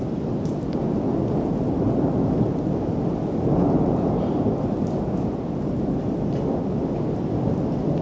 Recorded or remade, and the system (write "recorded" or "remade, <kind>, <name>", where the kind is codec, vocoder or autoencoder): recorded